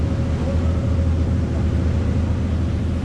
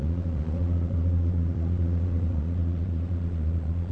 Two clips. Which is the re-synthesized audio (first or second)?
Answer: second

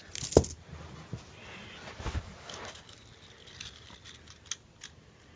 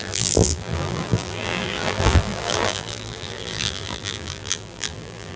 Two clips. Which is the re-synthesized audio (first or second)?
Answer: second